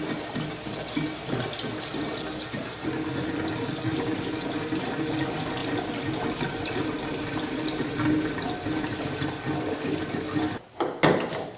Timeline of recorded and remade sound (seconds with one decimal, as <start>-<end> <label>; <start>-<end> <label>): 0.0-11.6 recorded